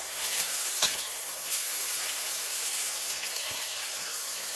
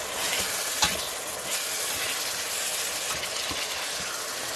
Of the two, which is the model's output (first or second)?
first